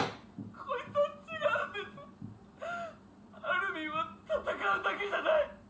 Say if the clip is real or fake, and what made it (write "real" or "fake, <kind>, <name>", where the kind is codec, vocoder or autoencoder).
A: real